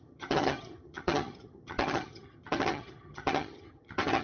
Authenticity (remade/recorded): remade